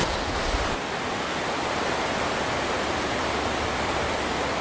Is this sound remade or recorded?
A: remade